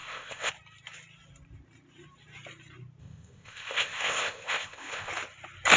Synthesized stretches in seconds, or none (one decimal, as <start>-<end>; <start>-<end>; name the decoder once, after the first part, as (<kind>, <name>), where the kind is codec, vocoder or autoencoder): 0.0-0.5 (codec, ZipCodec); 3.0-5.1